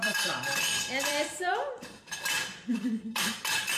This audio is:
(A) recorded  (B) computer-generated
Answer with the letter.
B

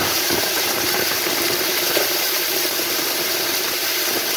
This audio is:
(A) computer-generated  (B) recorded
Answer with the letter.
A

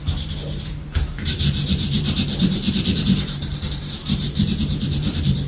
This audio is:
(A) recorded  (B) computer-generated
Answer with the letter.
B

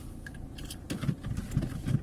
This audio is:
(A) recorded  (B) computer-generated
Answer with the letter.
A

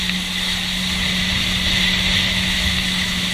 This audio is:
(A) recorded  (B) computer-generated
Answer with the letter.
A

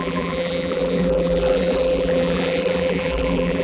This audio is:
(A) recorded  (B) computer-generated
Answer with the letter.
B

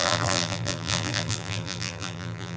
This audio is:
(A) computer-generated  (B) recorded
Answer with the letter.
A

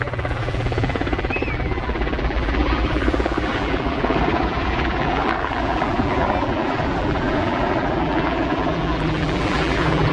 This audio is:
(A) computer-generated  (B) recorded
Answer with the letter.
A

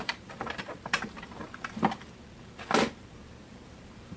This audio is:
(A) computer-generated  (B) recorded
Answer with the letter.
A